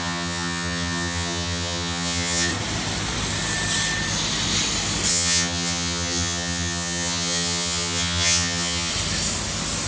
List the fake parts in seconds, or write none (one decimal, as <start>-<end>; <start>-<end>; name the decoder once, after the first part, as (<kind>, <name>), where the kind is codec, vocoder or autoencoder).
0.0-2.5 (vocoder, HiFi-GAN); 5.1-8.9